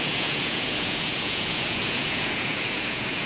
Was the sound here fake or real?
fake